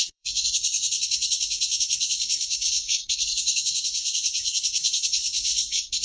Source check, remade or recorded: remade